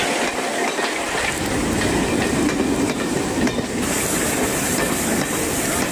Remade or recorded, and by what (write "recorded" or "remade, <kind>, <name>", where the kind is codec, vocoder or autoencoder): recorded